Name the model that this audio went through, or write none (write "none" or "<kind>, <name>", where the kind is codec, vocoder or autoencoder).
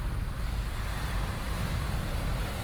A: vocoder, BigVGAN v2